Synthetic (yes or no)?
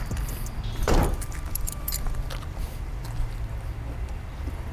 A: yes